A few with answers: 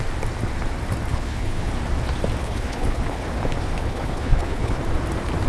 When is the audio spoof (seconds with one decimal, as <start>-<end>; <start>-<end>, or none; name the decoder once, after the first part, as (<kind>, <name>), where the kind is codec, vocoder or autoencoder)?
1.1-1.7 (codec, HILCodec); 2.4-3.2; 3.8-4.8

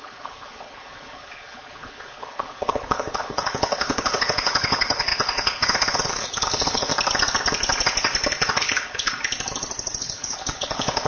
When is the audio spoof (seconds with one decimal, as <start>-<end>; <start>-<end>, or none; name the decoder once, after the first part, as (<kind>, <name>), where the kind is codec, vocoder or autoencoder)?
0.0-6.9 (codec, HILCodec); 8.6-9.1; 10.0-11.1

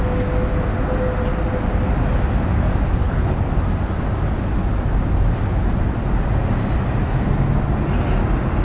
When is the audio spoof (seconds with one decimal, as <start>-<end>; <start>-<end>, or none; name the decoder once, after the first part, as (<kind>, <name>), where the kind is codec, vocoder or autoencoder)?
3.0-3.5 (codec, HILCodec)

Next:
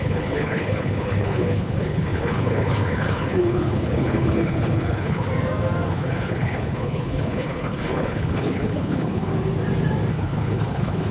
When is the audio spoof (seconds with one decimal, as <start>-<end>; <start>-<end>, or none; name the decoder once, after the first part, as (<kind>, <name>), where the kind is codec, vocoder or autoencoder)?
0.0-5.3 (codec, HILCodec); 5.9-9.3; 10.1-11.1

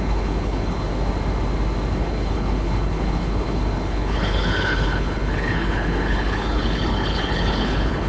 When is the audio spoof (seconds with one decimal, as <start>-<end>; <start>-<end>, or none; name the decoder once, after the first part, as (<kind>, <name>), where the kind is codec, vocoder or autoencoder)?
0.0-0.9 (codec, HILCodec); 1.9-8.1

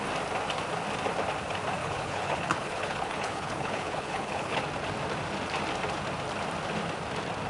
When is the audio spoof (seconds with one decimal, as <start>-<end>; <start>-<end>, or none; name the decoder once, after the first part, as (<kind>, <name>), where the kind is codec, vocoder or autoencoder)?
1.8-4.6 (codec, HILCodec)

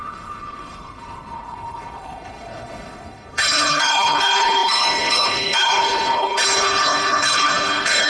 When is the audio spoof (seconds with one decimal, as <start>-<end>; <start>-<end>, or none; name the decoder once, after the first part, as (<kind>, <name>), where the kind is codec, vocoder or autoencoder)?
0.0-8.1 (codec, HILCodec)

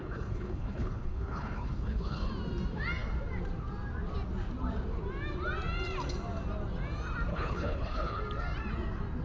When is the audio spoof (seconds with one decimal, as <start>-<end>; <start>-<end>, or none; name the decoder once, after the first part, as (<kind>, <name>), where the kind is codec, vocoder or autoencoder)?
0.0-2.3 (codec, HILCodec); 7.3-8.2